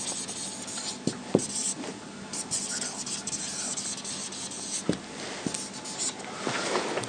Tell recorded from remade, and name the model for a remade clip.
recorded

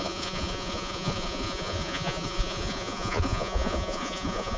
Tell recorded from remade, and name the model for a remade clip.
remade, vocoder, Vocos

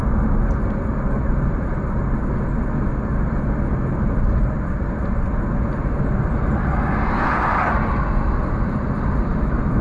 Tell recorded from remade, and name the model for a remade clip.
recorded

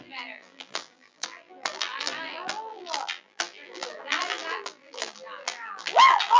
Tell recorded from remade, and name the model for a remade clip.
remade, vocoder, BigVGAN v2